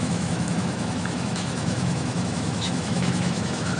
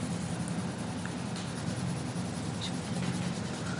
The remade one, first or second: first